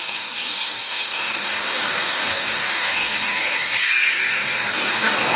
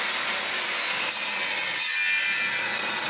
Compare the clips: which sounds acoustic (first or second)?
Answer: second